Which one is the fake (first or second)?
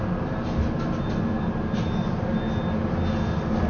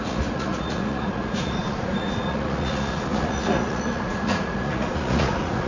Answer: second